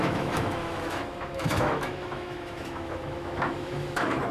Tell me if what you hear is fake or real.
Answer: fake